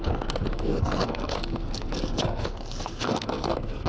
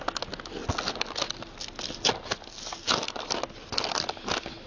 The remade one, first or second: first